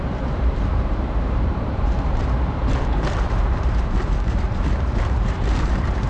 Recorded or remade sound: remade